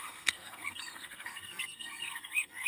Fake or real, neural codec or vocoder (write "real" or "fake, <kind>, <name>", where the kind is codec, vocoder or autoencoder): fake, codec, SNAC